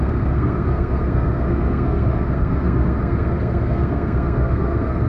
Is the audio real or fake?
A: fake